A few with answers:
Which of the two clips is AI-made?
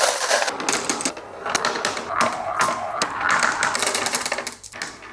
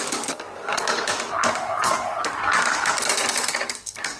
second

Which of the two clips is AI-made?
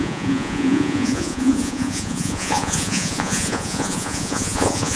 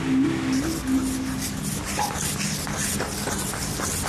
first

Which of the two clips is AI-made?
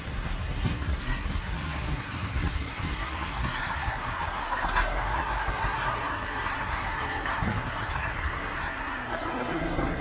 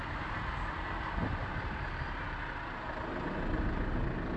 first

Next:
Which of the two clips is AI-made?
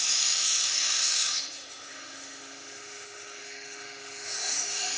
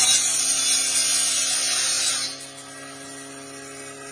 first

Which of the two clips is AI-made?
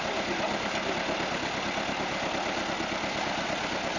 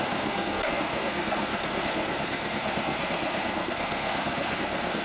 second